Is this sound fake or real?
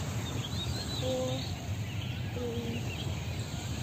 real